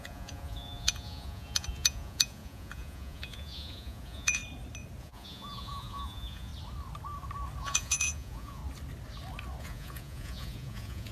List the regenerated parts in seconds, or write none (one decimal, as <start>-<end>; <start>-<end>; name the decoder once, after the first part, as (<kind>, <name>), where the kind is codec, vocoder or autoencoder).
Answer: 0.0-4.4 (vocoder, Vocos); 5.0-6.5; 7.6-8.6; 9.6-11.1